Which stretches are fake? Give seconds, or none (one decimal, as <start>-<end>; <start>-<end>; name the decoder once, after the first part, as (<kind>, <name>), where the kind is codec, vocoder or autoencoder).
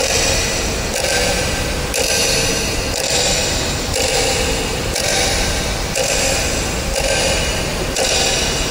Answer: none